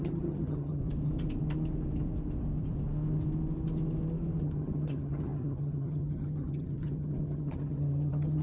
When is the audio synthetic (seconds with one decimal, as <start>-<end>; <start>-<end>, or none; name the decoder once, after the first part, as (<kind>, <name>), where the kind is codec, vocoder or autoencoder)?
0.0-0.8 (vocoder, HiFi-GAN); 4.4-8.4